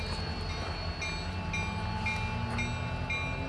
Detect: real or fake real